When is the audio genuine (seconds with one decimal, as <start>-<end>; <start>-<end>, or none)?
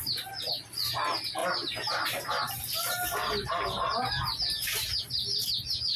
0.0-6.0